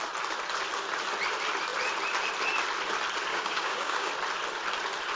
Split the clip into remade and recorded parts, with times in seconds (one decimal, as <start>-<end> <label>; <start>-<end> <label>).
0.0-3.3 recorded; 3.3-4.1 remade; 4.1-5.2 recorded